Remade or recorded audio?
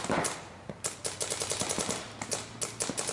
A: recorded